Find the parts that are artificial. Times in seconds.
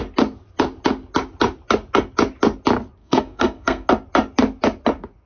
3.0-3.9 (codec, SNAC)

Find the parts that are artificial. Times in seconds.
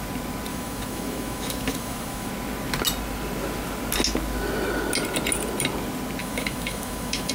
0.5-2.3 (autoencoder, DAC-VAE); 6.2-7.3